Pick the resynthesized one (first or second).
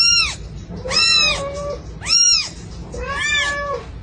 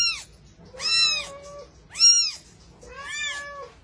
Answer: first